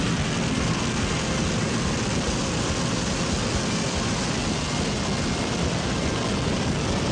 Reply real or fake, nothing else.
real